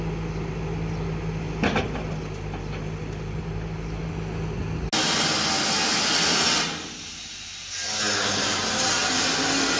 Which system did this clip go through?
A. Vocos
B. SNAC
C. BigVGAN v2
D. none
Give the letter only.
D